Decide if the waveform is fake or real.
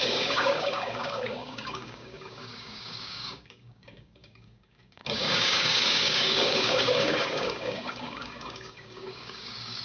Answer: fake